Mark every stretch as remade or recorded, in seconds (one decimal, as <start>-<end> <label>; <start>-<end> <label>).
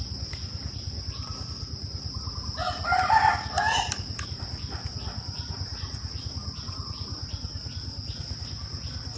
0.0-9.2 recorded